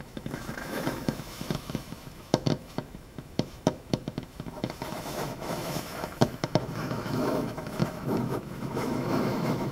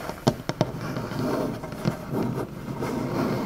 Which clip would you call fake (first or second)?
first